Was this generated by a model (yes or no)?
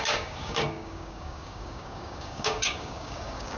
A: yes